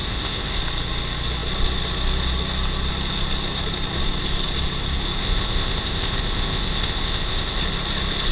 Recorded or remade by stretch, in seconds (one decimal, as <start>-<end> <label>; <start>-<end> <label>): 0.0-0.6 remade; 0.6-5.2 recorded; 5.2-7.6 remade; 7.6-8.3 recorded